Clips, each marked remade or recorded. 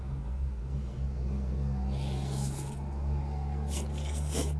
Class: remade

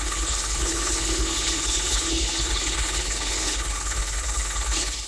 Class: remade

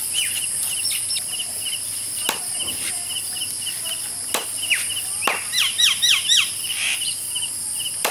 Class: remade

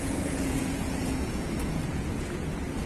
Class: remade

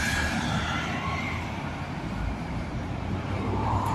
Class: remade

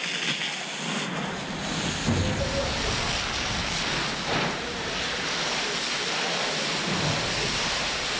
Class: recorded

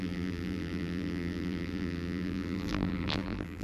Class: remade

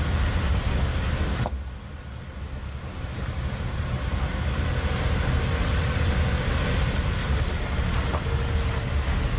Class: recorded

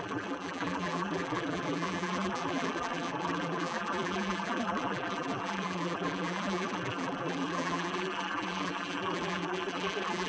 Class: remade